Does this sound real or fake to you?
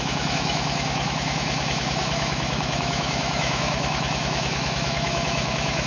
fake